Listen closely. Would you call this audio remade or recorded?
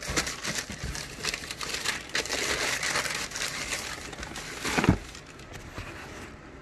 recorded